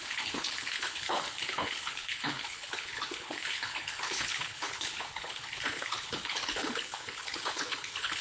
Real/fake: fake